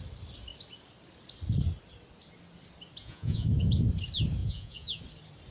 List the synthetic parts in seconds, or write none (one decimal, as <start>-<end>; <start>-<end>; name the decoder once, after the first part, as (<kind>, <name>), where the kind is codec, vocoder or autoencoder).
3.0-3.9 (vocoder, Vocos); 4.4-5.0